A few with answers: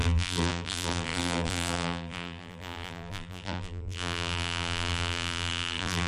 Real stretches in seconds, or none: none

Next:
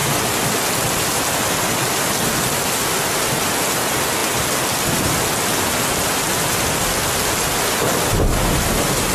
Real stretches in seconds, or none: 0.0-9.1

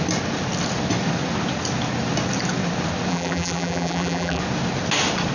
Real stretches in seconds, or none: 0.0-3.1; 4.4-5.3

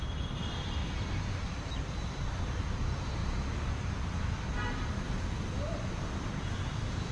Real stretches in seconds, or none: 0.8-1.7; 3.2-5.7

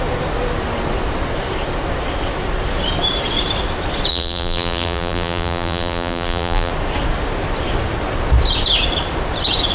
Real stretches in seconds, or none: 0.0-4.1; 6.7-9.7